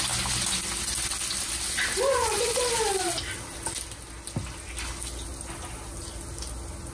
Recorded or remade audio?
recorded